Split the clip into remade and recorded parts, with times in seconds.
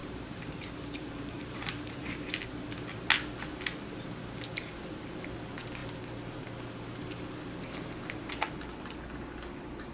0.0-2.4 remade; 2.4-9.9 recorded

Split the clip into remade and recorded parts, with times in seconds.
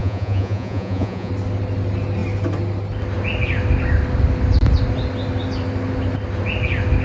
0.0-1.3 remade; 1.3-7.0 recorded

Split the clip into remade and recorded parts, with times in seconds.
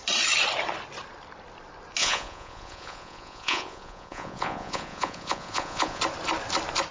0.0-2.0 recorded; 2.0-6.0 remade; 6.0-6.9 recorded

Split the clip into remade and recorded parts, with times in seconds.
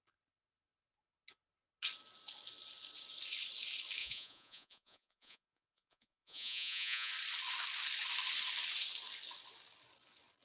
0.0-4.0 recorded; 4.0-7.1 remade; 7.1-10.4 recorded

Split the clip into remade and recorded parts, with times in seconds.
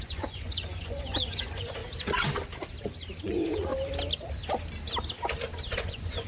0.0-1.8 remade; 1.8-3.2 recorded; 3.2-3.7 remade; 3.7-5.7 recorded; 5.7-6.3 remade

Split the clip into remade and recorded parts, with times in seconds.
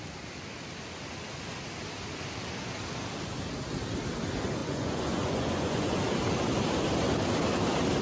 0.0-4.6 recorded; 4.6-6.0 remade; 6.0-8.0 recorded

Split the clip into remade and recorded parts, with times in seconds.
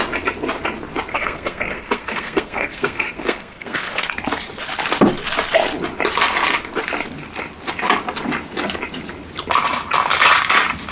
0.0-1.1 recorded; 1.1-4.1 remade; 4.1-10.9 recorded